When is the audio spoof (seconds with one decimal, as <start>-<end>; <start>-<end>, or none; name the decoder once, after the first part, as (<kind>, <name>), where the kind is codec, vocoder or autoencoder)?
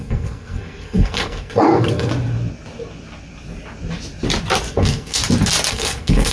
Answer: 0.0-2.1 (codec, SNAC); 4.7-5.2; 5.7-6.3